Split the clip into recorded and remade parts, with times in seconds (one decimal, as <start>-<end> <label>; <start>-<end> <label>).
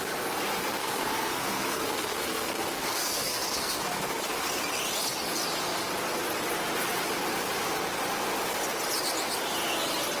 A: 0.0-0.8 recorded; 0.8-4.2 remade; 4.2-10.2 recorded